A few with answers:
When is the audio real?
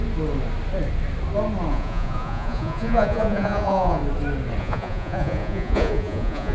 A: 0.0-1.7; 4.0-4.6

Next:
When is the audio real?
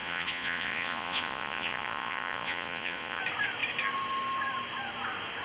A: 3.2-5.4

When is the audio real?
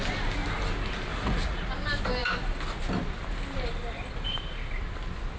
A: 0.0-1.1; 1.6-5.4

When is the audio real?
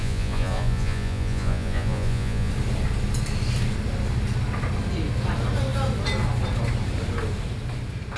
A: 2.5-8.2